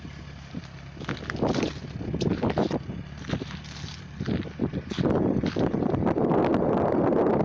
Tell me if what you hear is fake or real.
real